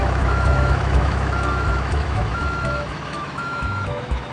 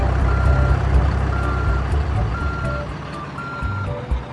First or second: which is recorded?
second